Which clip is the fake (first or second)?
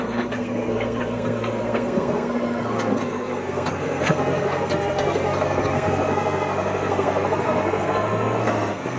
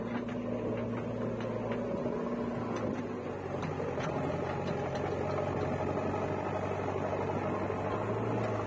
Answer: first